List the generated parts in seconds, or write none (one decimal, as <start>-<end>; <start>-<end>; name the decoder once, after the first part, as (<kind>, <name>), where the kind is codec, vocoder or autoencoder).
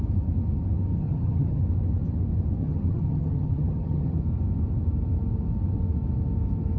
0.9-1.6 (vocoder, HiFi-GAN); 2.6-4.2